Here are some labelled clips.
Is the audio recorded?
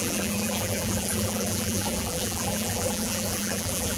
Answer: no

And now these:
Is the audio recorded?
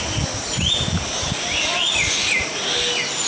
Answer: yes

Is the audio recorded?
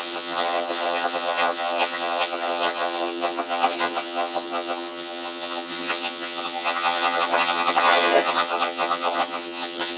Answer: no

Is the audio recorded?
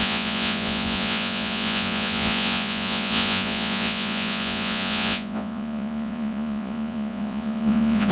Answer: no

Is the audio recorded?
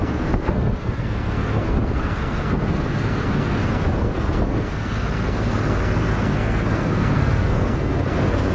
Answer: no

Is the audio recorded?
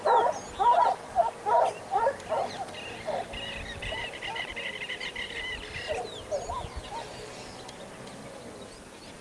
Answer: yes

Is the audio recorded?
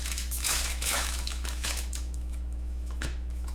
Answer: no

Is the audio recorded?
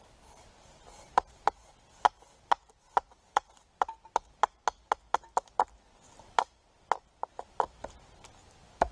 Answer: yes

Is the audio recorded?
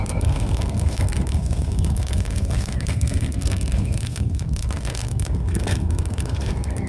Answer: no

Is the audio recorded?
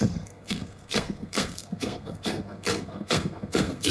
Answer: no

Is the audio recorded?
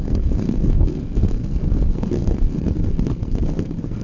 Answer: no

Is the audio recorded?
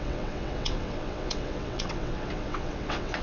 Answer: no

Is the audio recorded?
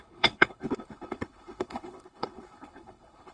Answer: no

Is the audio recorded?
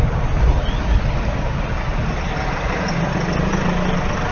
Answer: yes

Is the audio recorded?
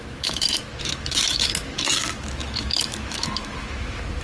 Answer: no